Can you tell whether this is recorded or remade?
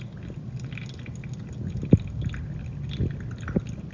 recorded